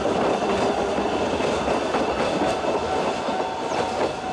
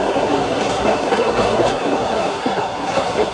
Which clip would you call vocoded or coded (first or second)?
second